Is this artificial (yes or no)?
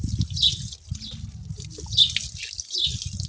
no